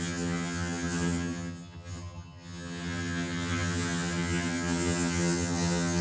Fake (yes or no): yes